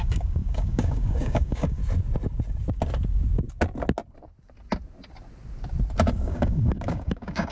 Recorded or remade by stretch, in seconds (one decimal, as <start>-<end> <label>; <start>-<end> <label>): 0.0-1.8 remade; 1.8-6.1 recorded; 6.1-7.5 remade